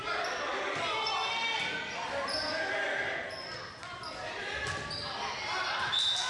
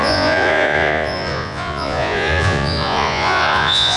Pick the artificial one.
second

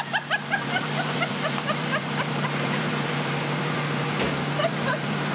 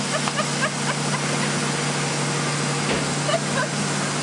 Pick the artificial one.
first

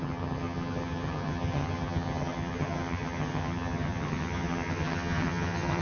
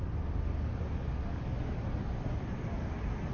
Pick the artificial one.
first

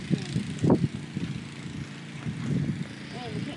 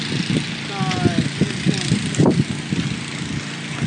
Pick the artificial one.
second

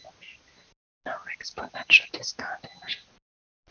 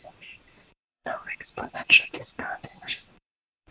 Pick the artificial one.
second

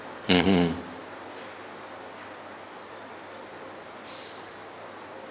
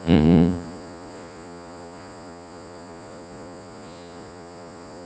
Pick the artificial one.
second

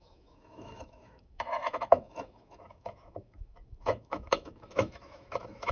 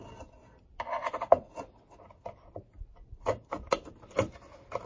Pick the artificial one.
first